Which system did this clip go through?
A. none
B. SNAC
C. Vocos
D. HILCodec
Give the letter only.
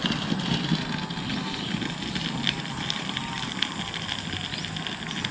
A